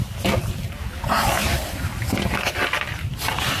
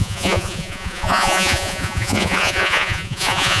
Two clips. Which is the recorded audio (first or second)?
first